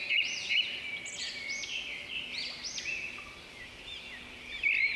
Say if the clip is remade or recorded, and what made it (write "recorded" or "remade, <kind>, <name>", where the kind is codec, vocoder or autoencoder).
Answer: recorded